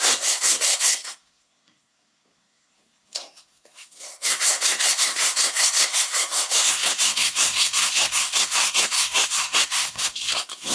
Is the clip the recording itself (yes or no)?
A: no